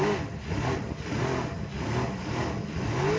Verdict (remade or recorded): recorded